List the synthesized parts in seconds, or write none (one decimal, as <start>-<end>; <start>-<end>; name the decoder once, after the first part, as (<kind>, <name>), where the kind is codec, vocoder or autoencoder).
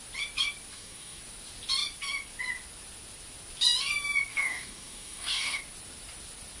0.7-1.2 (codec, DAC); 4.3-5.6